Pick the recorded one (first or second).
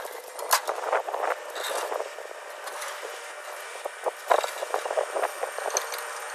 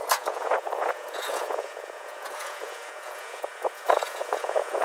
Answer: first